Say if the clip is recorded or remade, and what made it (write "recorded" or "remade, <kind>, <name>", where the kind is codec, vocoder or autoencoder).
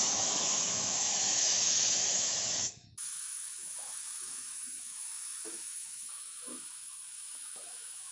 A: remade, autoencoder, DAC-VAE